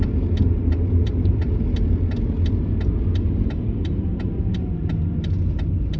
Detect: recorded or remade recorded